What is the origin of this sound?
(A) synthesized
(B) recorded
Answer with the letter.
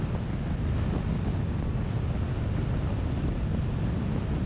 B